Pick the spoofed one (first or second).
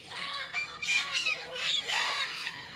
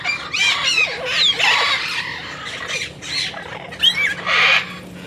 first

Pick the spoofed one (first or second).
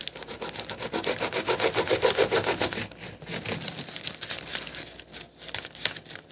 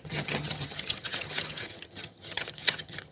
second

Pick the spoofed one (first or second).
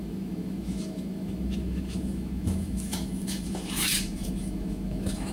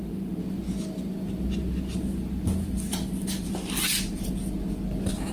first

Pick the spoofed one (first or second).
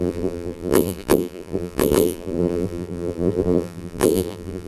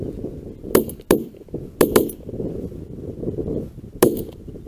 first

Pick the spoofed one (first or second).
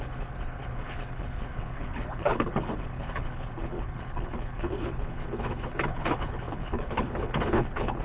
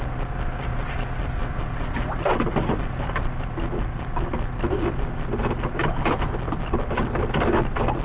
first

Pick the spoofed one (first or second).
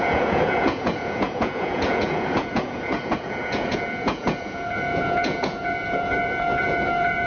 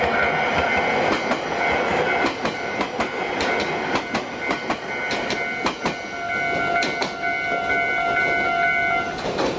first